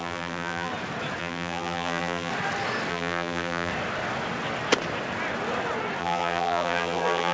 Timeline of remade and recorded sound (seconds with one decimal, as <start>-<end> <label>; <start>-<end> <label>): 0.0-0.7 remade; 0.7-1.2 recorded; 1.2-2.3 remade; 2.3-2.9 recorded; 2.9-3.7 remade; 3.7-6.0 recorded; 6.0-7.3 remade